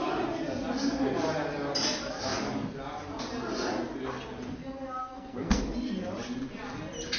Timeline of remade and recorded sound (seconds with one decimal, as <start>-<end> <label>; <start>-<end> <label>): 0.0-5.0 recorded; 5.0-5.6 remade; 5.6-7.2 recorded